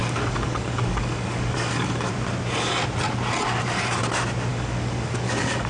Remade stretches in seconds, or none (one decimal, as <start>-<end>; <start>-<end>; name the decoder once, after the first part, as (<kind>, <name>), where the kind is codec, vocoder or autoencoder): 0.0-2.1 (codec, DAC); 4.5-5.7